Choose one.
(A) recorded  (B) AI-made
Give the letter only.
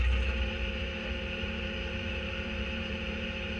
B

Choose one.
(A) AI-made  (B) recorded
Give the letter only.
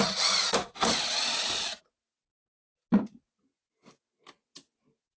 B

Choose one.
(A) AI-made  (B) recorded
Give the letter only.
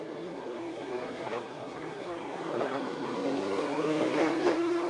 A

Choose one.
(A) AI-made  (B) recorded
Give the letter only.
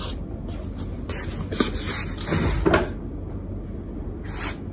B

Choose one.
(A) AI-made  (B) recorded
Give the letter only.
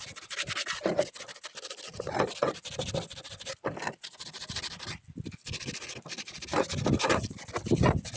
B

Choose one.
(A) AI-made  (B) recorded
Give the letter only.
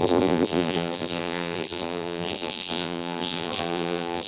A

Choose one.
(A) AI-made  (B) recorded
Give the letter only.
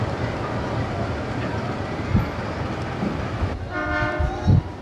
B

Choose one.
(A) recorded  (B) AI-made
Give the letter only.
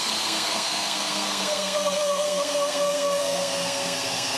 B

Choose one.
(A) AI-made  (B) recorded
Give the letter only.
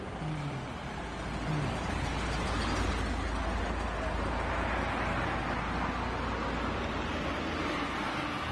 B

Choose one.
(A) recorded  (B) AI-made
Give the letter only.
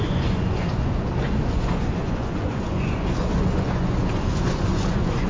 B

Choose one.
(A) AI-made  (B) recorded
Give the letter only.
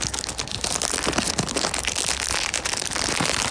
B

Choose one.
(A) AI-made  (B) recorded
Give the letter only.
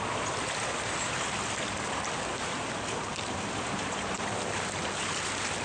A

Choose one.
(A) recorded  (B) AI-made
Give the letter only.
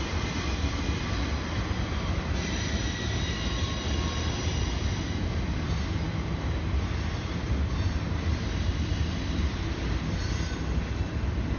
A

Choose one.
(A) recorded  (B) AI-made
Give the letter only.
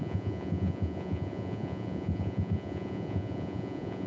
B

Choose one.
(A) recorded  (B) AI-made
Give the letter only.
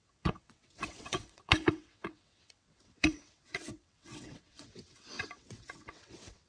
B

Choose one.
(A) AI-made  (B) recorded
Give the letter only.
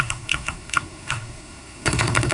A